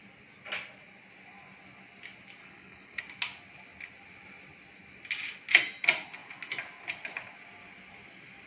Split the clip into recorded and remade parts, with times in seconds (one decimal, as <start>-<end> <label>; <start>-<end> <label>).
0.0-2.4 recorded; 2.4-3.0 remade; 3.0-8.5 recorded